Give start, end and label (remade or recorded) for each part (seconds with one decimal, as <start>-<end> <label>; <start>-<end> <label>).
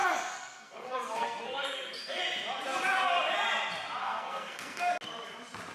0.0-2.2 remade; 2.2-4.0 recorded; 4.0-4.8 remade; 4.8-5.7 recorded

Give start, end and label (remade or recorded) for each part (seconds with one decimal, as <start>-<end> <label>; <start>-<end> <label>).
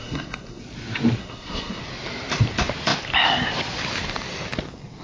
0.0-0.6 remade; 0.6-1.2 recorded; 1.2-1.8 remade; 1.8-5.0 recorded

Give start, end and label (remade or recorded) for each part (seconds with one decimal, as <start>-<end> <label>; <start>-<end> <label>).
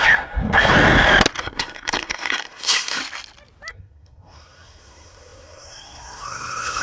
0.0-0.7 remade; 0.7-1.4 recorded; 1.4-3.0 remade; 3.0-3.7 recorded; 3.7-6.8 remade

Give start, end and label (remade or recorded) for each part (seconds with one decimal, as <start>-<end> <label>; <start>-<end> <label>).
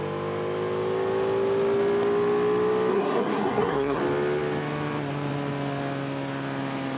0.0-2.9 recorded; 2.9-4.0 remade; 4.0-7.0 recorded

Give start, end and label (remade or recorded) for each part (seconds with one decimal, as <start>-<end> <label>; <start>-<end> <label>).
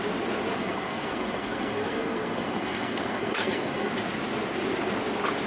0.0-0.6 recorded; 0.6-3.9 remade; 3.9-5.5 recorded